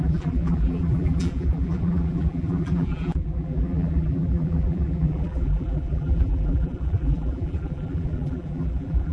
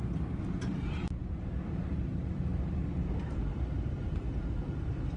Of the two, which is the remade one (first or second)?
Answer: first